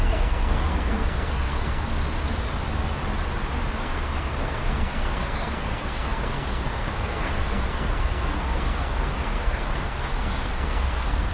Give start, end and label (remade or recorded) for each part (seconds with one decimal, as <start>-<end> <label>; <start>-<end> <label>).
0.0-1.9 remade; 1.9-3.8 recorded; 3.8-11.3 remade